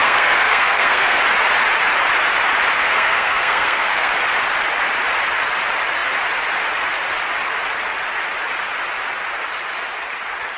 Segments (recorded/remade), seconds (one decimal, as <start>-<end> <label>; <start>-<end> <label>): 0.0-1.2 remade; 1.2-2.8 recorded; 2.8-4.1 remade; 4.1-10.6 recorded